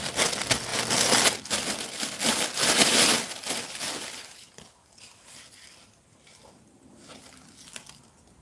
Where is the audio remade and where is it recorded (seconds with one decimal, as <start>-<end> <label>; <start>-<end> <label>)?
0.0-8.4 recorded